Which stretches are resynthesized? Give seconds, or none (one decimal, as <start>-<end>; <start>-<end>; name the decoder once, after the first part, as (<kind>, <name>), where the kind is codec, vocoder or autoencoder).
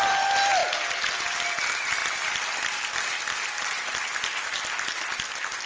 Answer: none